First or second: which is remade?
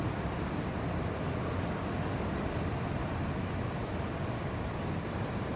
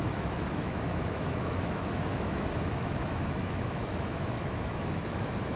second